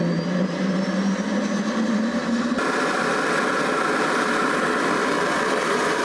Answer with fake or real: real